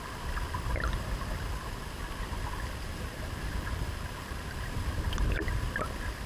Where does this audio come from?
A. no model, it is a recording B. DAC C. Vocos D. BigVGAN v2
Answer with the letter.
D